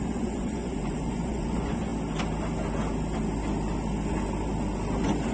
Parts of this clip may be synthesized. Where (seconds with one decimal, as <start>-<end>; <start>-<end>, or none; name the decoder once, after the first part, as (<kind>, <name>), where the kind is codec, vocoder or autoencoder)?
0.0-1.9 (vocoder, Vocos)